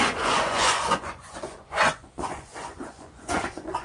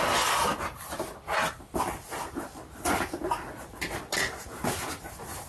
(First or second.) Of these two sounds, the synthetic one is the first